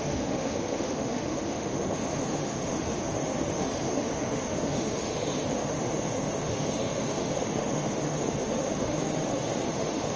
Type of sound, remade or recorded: remade